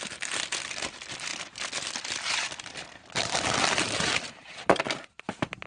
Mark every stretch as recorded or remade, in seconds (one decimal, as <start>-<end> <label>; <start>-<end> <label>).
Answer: 0.0-1.3 remade; 1.3-2.6 recorded; 2.6-5.7 remade